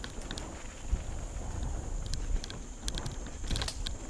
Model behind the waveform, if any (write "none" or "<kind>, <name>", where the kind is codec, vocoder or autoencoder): none